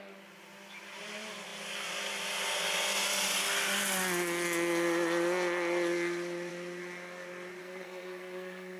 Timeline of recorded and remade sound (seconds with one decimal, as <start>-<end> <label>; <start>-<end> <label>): 0.0-7.6 recorded; 7.6-8.8 remade